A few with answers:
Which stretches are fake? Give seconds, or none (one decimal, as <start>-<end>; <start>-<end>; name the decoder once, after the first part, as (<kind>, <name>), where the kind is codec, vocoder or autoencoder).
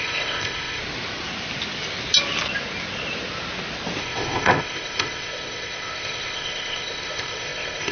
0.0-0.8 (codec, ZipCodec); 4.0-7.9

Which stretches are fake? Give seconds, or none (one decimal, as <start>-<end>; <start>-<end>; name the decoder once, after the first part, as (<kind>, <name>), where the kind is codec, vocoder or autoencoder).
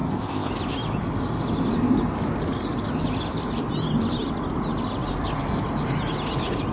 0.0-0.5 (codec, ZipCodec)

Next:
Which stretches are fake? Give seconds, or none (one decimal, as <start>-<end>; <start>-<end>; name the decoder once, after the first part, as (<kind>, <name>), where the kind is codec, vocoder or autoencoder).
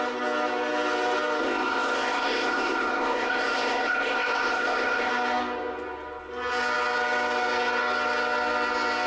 1.4-5.1 (codec, ZipCodec)